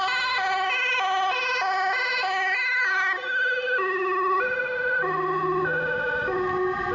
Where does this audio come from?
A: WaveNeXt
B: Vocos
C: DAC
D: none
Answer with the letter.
D